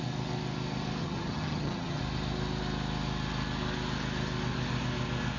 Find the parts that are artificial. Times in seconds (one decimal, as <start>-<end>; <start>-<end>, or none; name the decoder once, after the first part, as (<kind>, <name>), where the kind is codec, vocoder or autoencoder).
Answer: 1.0-2.0 (vocoder, HiFi-GAN)